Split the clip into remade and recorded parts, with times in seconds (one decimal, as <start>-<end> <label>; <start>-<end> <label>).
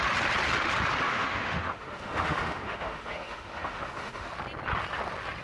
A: 0.0-1.1 recorded; 1.1-4.3 remade; 4.3-5.4 recorded